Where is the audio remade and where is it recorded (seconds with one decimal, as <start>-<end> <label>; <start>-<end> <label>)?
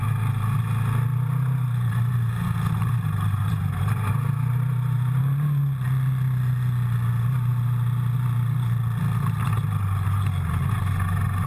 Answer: 0.0-1.1 recorded; 1.1-5.2 remade; 5.2-11.5 recorded